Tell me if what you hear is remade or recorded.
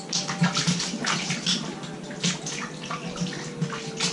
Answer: recorded